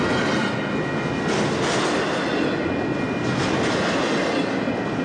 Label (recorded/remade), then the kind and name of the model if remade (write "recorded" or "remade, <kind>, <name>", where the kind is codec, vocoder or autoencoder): recorded